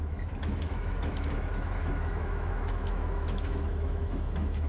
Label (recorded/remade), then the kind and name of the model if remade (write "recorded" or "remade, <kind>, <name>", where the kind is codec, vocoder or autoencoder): remade, autoencoder, DAC-VAE